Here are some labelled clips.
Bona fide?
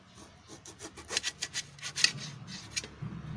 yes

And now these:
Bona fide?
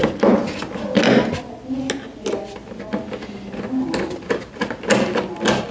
yes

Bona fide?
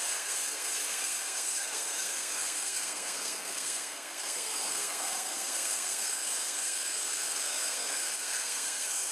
no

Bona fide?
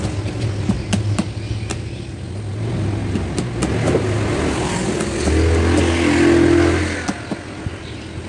yes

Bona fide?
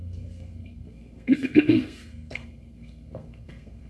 no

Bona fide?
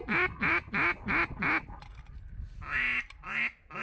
yes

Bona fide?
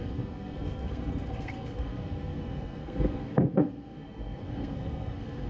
no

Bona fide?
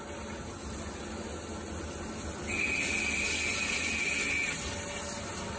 yes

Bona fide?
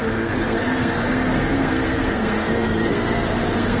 no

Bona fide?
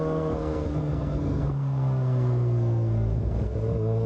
no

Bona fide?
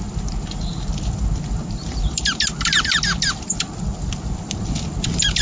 yes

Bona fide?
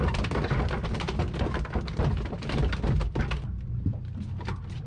yes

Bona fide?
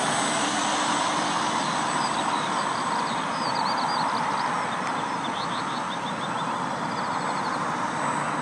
yes